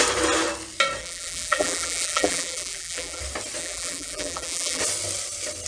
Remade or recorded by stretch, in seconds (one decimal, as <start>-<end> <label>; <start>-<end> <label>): 0.0-1.0 recorded; 1.0-3.2 remade; 3.2-3.6 recorded; 3.6-4.8 remade; 4.8-5.7 recorded